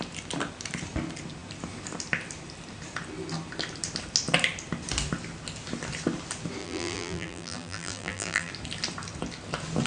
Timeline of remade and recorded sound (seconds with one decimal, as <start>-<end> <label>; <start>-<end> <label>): 0.0-6.6 recorded; 6.6-8.5 remade; 8.5-9.9 recorded